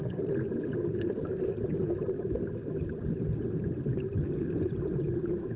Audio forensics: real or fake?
real